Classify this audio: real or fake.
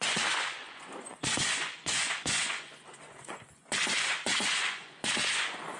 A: fake